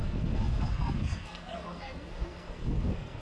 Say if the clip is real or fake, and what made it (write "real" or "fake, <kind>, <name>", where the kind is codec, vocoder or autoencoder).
fake, codec, SNAC